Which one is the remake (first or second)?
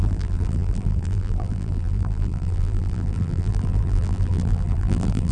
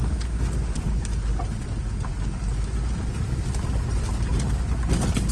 first